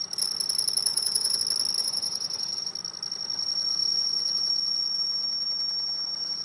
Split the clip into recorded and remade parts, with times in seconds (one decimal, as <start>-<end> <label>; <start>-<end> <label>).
0.0-0.9 recorded; 0.9-1.4 remade; 1.4-1.8 recorded; 1.8-2.7 remade; 2.7-3.7 recorded; 3.7-5.0 remade; 5.0-6.4 recorded